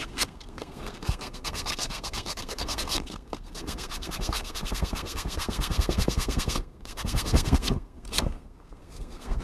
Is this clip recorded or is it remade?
remade